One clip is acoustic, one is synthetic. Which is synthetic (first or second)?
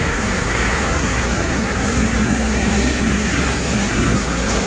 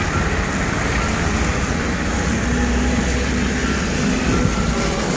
first